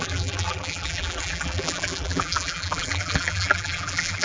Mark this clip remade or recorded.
remade